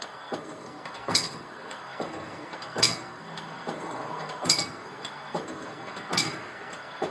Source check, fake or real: fake